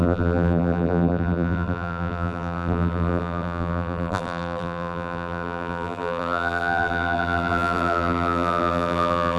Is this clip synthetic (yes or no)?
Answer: yes